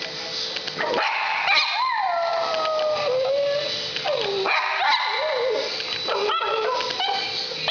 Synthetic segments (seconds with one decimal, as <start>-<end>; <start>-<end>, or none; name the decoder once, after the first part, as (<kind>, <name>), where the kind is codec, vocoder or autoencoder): none